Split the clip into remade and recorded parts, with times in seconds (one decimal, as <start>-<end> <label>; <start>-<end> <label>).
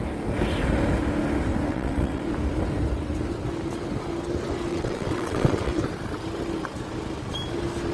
0.0-1.7 recorded; 1.7-2.2 remade; 2.2-4.7 recorded; 4.7-5.8 remade; 5.8-7.9 recorded